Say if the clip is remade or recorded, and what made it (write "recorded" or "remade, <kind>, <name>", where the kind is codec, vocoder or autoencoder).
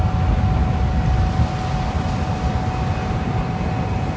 recorded